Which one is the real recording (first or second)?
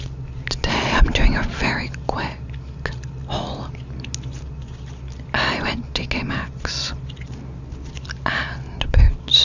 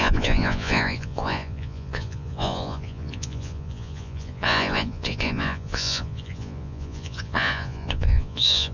first